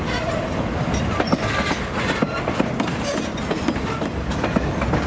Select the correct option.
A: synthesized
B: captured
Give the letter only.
B